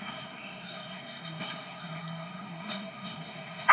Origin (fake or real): fake